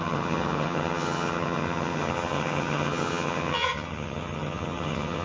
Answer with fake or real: fake